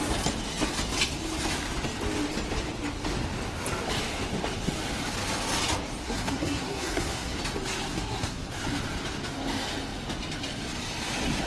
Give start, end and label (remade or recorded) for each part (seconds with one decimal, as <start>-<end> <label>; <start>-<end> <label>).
0.0-6.0 recorded; 6.0-7.4 remade; 7.4-7.9 recorded; 7.9-8.5 remade; 8.5-11.5 recorded